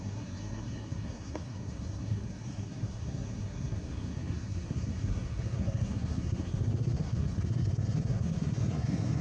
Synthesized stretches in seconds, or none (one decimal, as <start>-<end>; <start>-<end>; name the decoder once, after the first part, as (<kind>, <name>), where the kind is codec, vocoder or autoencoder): 0.0-9.2 (codec, SNAC)